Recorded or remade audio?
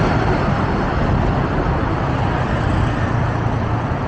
recorded